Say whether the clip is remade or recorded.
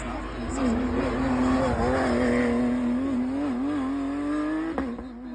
recorded